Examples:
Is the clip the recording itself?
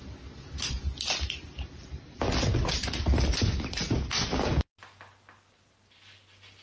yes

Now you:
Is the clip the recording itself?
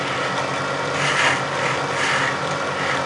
yes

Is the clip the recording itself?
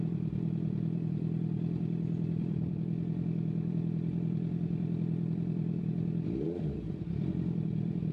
no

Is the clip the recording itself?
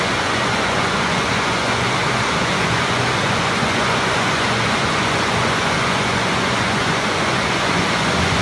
no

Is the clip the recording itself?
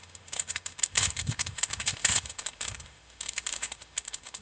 no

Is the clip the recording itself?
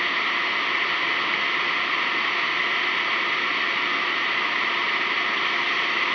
yes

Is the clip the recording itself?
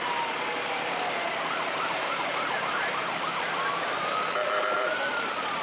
no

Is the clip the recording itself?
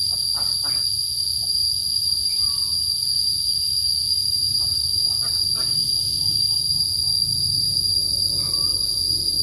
yes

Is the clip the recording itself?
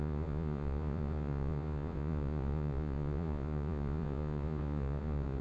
no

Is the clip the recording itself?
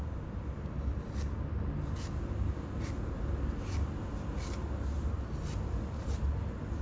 yes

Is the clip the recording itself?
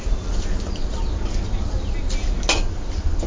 yes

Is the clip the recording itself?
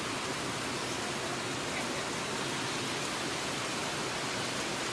yes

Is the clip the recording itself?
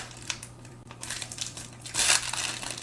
no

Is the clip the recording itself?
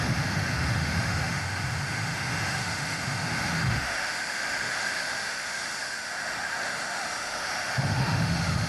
no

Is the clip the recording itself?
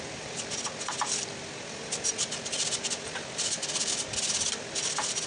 yes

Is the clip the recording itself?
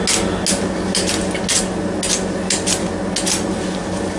yes